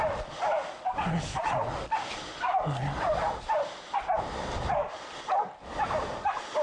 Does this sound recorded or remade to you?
recorded